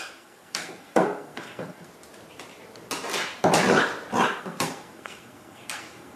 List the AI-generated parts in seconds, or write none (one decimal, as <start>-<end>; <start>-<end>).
0.0-1.9; 4.4-6.2

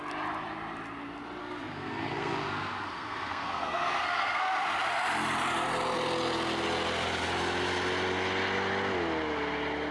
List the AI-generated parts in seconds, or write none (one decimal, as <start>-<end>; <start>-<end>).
1.4-4.4

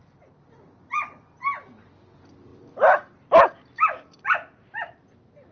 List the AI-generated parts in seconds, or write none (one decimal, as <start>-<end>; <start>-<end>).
none

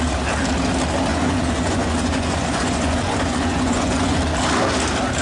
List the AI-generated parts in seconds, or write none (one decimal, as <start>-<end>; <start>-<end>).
1.1-4.2

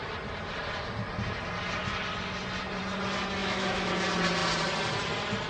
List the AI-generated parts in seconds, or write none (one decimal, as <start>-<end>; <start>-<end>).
3.4-3.9

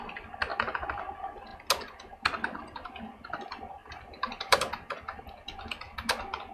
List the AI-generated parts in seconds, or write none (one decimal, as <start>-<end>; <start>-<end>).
3.8-4.8

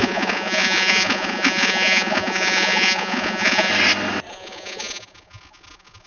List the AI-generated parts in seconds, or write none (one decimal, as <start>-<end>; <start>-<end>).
0.0-3.7; 4.3-6.1